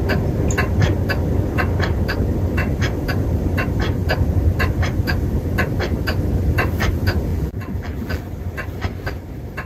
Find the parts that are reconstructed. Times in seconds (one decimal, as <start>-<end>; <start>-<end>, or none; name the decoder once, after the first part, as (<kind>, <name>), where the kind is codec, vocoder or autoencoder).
7.3-8.2 (vocoder, BigVGAN v2)